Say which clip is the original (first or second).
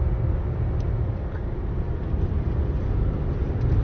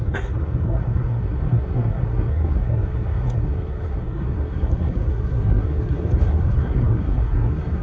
first